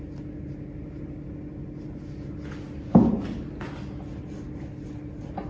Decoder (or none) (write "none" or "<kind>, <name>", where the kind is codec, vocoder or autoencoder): none